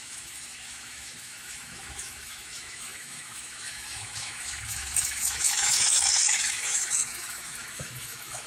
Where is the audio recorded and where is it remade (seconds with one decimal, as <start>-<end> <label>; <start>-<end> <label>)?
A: 0.0-8.5 remade